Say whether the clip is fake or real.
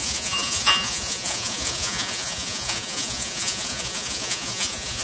fake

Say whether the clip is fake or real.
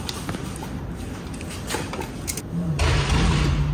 real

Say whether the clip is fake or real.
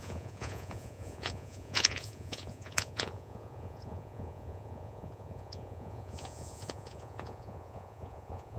fake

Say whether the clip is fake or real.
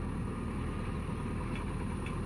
real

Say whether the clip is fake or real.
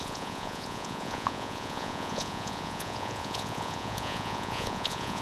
fake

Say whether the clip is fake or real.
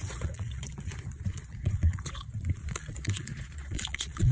fake